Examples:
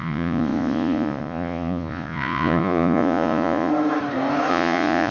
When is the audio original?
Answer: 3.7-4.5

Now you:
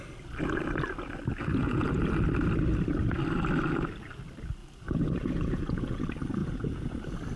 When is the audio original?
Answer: 0.0-1.4; 2.0-4.6; 6.0-6.4; 7.0-7.4